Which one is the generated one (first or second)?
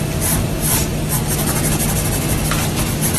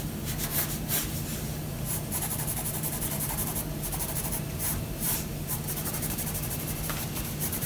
second